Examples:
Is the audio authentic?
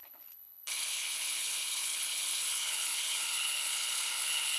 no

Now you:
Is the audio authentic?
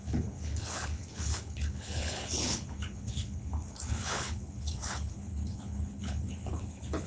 no